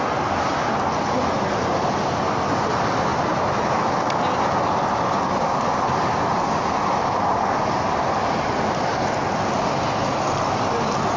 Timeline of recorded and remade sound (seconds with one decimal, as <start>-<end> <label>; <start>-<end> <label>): 0.0-11.2 recorded